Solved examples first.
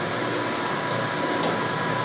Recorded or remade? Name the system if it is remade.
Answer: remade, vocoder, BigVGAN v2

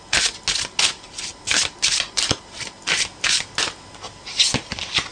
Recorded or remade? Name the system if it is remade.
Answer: recorded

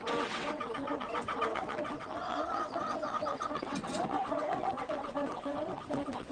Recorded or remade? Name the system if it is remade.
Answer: remade, vocoder, WaveNeXt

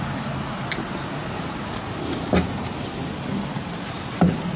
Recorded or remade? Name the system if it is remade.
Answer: recorded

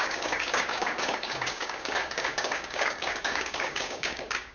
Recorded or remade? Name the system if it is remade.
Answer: remade, codec, DAC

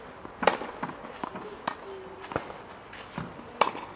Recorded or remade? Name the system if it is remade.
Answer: recorded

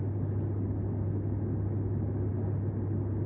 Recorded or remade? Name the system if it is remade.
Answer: recorded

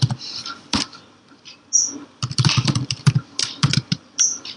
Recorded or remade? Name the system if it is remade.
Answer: remade, vocoder, BigVGAN v2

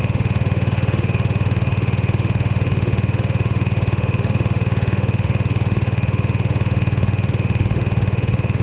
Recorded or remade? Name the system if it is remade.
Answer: remade, autoencoder, DAC-VAE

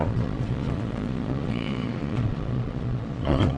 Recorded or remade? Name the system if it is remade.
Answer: remade, vocoder, Vocos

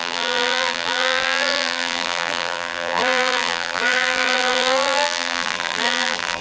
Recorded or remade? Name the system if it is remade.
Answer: remade, vocoder, BigVGAN v2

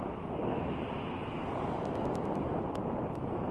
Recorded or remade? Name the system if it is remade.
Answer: recorded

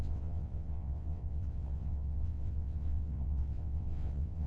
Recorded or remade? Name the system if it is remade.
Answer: remade, vocoder, WaveNeXt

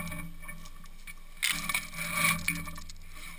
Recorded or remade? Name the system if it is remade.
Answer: recorded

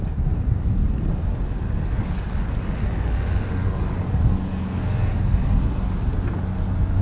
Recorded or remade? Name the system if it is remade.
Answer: recorded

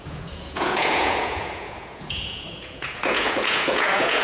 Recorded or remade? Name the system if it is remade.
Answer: remade, vocoder, Vocos